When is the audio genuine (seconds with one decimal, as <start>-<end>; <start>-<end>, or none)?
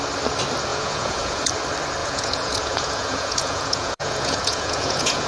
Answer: 0.0-0.7; 1.5-2.0